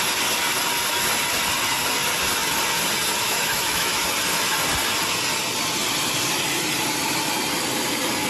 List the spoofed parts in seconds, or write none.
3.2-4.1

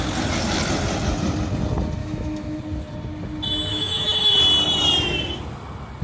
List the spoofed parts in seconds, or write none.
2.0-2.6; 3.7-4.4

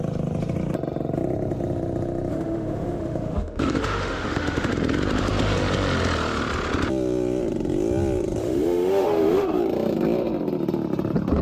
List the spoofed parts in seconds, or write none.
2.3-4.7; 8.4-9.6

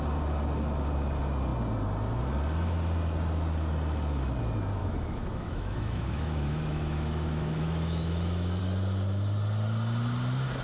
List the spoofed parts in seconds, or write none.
4.8-8.6

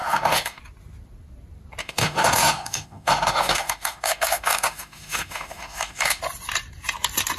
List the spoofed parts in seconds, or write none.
0.0-0.6; 1.8-6.2

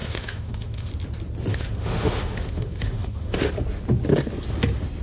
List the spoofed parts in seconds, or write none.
0.0-0.9; 1.5-3.5